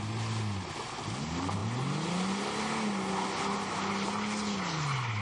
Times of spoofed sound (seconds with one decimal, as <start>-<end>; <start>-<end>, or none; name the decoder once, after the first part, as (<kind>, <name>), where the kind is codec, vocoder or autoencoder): none